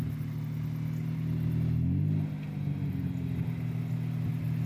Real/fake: real